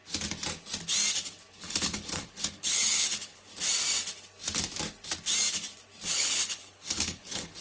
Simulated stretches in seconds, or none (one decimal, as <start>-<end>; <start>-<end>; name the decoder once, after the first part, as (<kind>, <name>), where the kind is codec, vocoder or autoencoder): 1.5-3.5 (codec, HILCodec); 6.1-7.6